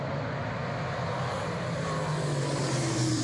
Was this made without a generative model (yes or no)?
yes